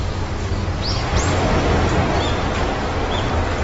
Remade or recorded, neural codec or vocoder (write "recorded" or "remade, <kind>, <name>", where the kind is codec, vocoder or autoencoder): recorded